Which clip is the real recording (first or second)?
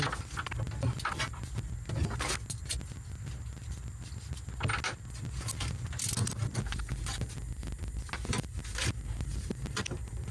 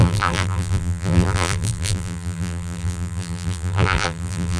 first